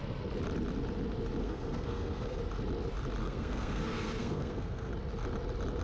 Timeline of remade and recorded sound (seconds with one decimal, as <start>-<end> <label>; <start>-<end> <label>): 0.0-1.4 recorded; 1.4-2.4 remade; 2.4-3.2 recorded; 3.2-4.9 remade; 4.9-5.8 recorded